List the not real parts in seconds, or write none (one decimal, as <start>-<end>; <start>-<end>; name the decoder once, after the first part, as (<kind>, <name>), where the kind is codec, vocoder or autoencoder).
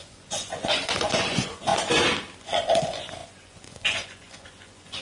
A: 0.0-1.7 (vocoder, Vocos); 2.4-5.0